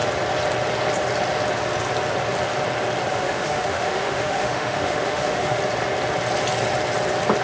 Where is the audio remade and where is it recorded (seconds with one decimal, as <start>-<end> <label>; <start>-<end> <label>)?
0.0-3.1 recorded; 3.1-5.6 remade; 5.6-7.4 recorded